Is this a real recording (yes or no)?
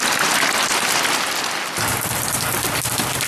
yes